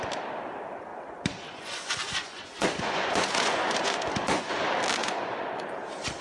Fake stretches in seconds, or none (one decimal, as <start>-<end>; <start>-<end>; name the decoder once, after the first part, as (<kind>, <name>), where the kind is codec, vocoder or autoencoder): 0.9-4.6 (vocoder, Vocos); 5.0-5.6